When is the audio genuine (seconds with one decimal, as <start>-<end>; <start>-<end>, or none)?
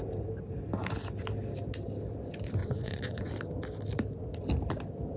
0.0-2.6; 3.3-5.2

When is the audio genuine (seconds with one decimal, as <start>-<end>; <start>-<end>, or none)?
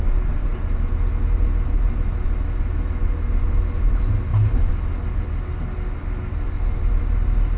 0.0-7.6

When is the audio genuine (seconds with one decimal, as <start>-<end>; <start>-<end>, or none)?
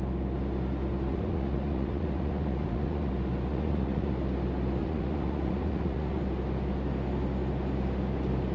0.0-1.1; 3.1-3.5; 4.1-4.8; 6.2-8.5